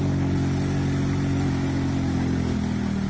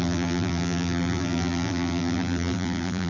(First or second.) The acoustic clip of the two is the first